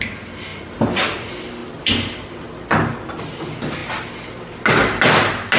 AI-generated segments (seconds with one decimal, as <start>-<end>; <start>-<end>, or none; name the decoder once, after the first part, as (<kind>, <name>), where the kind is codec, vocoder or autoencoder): 0.5-1.2 (vocoder, BigVGAN v2)

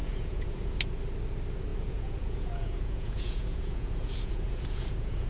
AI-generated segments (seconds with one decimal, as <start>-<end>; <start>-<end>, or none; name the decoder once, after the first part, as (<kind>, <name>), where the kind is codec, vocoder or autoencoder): 0.0-0.8 (vocoder, Vocos); 1.7-5.3

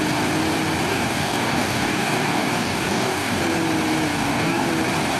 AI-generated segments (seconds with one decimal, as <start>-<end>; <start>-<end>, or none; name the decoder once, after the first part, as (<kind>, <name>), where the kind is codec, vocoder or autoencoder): 0.9-3.4 (codec, DAC); 4.1-4.7

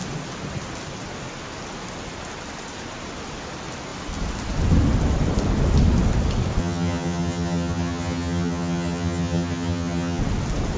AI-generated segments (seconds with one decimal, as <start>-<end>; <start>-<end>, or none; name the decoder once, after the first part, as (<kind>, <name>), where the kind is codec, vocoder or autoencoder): 6.6-10.2 (vocoder, HiFi-GAN)

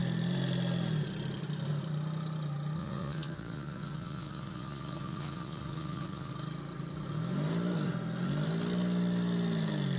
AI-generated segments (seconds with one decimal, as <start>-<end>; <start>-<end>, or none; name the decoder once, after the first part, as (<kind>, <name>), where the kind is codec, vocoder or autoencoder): 2.8-6.3 (vocoder, Vocos)

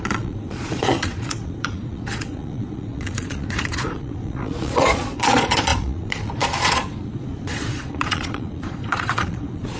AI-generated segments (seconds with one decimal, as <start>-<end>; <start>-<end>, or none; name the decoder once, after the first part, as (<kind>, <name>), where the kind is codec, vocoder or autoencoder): 0.0-9.8 (vocoder, Vocos)